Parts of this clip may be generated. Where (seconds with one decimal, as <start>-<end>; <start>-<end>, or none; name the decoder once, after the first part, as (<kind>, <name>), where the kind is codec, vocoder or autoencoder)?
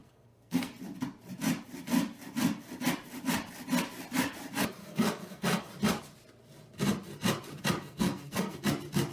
0.0-0.7 (codec, SNAC); 4.8-5.7; 7.8-8.6